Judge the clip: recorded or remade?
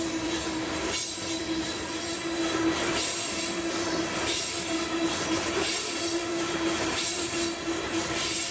remade